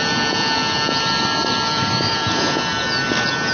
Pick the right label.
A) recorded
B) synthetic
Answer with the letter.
A